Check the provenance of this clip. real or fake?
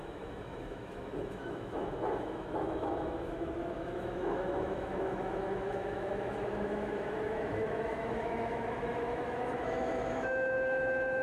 fake